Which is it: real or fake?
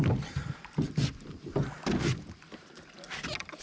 real